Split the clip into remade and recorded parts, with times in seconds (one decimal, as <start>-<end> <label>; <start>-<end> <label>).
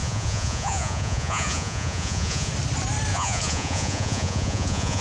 0.0-2.5 remade; 2.5-3.1 recorded; 3.1-5.0 remade